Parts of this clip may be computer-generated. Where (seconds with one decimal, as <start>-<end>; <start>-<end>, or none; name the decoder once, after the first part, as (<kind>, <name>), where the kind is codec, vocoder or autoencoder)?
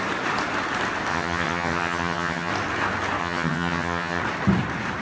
1.1-2.5 (vocoder, HiFi-GAN); 3.2-4.2